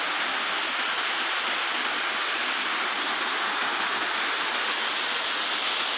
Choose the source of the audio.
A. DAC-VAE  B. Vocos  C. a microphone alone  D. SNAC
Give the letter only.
C